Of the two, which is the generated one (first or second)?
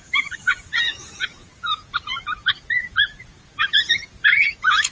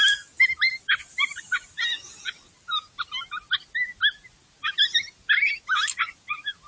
first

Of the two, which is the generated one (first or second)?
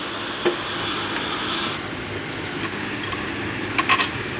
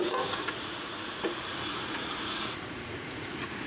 second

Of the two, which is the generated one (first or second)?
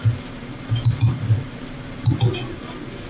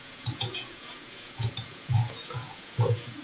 second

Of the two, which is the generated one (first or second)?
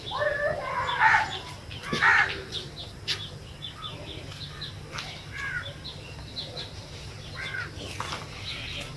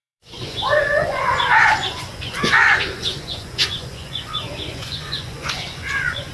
second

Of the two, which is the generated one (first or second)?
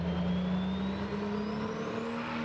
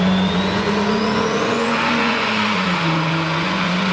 second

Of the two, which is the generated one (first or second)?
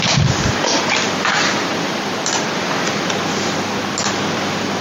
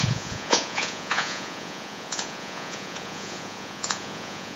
second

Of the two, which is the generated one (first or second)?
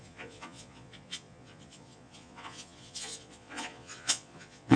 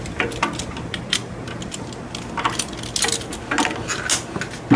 first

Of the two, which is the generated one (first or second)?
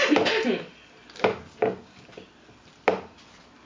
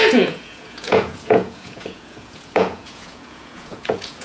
second